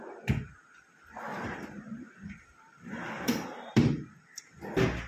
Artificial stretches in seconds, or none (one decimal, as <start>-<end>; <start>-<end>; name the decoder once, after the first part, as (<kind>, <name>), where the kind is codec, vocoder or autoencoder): 1.3-4.4 (vocoder, BigVGAN v2)